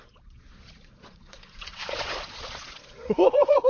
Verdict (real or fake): fake